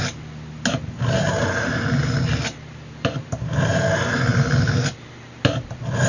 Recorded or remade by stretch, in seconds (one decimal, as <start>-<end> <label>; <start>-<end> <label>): 0.0-6.1 recorded